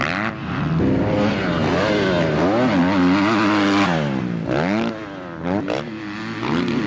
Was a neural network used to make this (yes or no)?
no